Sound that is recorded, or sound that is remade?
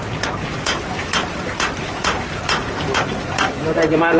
remade